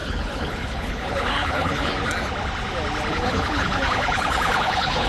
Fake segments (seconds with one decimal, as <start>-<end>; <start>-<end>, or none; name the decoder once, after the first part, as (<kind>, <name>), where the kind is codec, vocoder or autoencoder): 0.0-1.9 (codec, HILCodec); 3.1-5.1